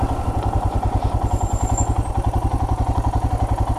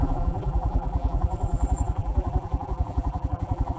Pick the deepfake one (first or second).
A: second